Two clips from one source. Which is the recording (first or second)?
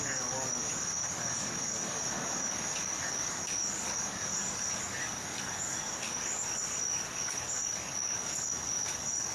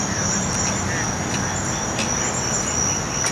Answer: second